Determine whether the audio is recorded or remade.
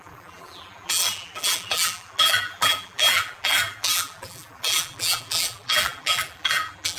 remade